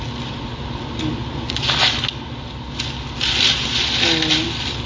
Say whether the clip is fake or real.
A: real